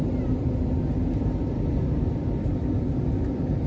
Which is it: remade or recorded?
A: recorded